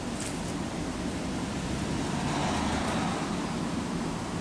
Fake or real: real